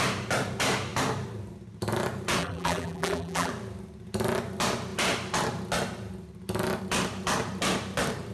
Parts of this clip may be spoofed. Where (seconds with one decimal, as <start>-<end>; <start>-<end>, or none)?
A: 2.4-3.5